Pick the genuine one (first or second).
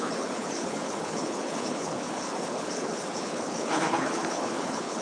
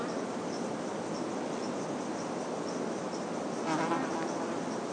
second